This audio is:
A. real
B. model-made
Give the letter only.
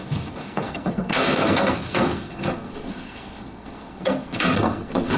B